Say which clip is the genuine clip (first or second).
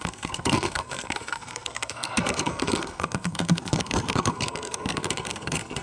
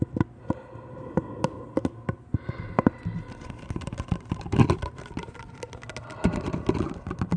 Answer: second